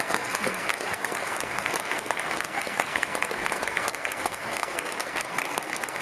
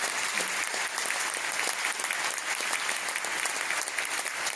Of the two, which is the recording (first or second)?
second